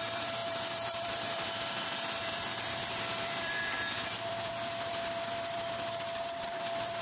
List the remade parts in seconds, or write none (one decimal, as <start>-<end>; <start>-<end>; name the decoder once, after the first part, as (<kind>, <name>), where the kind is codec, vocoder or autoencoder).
0.0-7.0 (vocoder, BigVGAN v2)